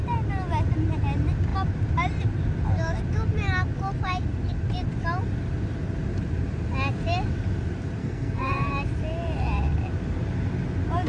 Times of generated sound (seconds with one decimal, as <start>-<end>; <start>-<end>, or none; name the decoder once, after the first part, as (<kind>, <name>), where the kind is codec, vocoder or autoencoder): 8.0-8.7 (codec, SNAC)

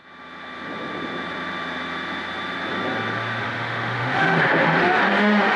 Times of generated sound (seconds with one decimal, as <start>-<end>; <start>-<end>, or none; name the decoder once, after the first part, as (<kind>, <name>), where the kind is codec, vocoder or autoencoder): 3.4-5.6 (autoencoder, DAC-VAE)

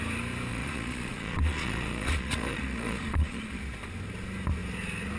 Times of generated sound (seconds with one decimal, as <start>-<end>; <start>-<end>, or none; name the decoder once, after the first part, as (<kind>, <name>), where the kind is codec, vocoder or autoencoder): 0.5-3.6 (vocoder, Vocos)

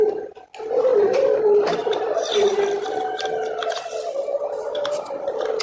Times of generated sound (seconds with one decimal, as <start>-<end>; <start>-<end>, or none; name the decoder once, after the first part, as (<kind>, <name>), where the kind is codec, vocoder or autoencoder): 4.3-5.1 (vocoder, BigVGAN v2)

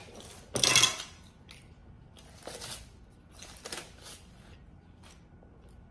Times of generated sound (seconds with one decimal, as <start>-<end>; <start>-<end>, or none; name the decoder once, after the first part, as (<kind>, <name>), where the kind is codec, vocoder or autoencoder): none